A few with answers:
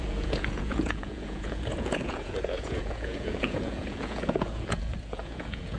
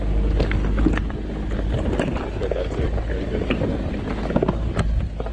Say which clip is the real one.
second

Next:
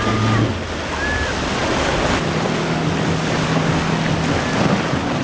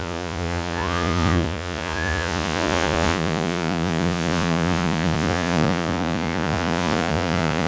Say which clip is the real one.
first